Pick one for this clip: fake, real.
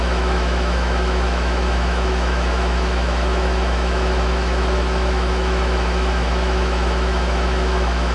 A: fake